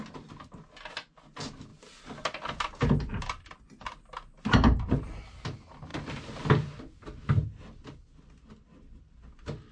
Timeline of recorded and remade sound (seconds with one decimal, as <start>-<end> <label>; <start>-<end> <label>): 0.0-9.7 recorded